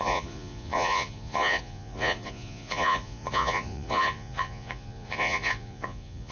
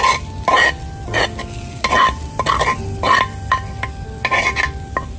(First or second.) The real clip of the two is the second